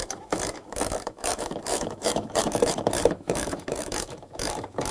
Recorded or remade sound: remade